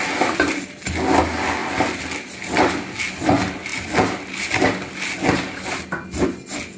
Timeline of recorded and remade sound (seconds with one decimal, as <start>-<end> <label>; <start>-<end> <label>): 0.0-6.8 recorded